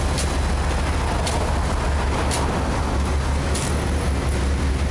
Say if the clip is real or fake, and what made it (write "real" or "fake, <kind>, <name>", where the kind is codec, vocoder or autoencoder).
real